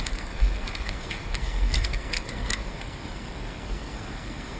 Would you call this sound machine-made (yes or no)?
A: yes